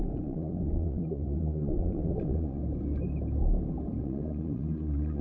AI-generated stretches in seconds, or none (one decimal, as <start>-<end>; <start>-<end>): 0.0-2.6; 4.0-5.2